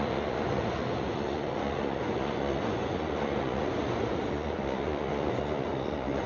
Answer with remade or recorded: remade